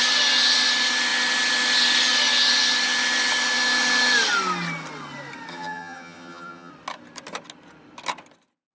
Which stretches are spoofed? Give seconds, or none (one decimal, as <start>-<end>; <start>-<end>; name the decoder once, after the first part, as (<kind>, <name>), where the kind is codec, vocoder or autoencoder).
5.5-6.7 (vocoder, HiFi-GAN)